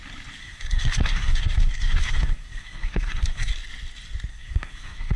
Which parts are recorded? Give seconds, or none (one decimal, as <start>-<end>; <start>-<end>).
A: 0.0-0.4; 3.5-4.3